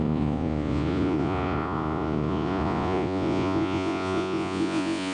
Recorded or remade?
remade